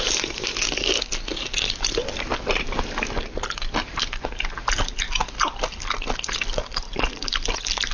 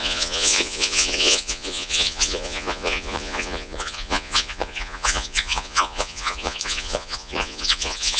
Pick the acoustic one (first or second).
first